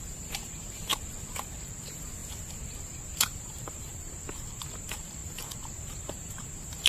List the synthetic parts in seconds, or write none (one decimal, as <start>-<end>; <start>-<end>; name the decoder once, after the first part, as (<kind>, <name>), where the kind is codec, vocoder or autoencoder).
0.0-0.9 (vocoder, BigVGAN v2); 1.8-6.9